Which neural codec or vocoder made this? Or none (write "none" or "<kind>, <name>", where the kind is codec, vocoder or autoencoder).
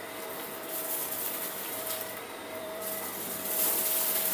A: vocoder, BigVGAN v2